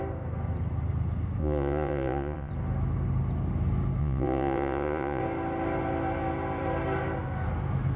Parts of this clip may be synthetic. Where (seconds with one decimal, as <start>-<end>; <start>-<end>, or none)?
1.4-2.5; 4.0-5.2